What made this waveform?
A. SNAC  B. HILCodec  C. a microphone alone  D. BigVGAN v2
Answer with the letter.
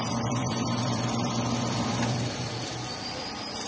D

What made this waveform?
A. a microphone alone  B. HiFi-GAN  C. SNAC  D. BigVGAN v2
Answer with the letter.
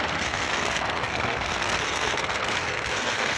C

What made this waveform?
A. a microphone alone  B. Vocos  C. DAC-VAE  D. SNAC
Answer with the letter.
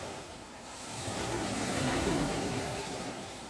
D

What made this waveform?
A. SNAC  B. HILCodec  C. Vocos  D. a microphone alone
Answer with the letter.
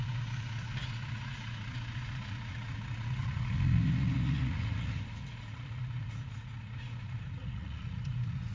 C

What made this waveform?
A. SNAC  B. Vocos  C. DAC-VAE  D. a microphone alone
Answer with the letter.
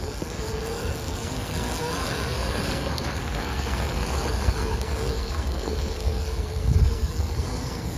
A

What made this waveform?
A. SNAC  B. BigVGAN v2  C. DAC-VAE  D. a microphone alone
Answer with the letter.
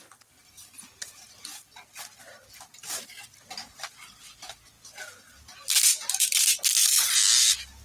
D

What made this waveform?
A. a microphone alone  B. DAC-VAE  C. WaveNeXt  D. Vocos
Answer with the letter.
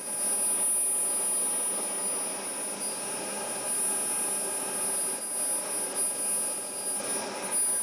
A